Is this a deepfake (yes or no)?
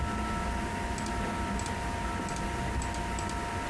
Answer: no